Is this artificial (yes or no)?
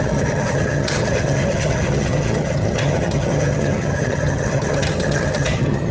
yes